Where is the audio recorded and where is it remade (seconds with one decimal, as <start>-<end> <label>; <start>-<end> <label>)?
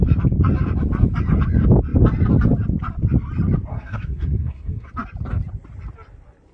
0.0-3.7 recorded; 3.7-4.9 remade; 4.9-6.5 recorded